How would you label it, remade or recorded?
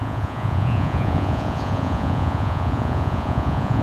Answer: remade